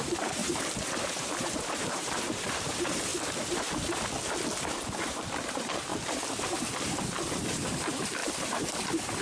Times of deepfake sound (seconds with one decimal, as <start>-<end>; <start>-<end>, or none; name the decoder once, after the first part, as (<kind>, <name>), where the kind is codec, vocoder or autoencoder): 0.0-3.1 (vocoder, BigVGAN v2); 5.0-5.9; 6.6-9.2